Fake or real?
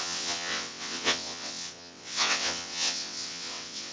fake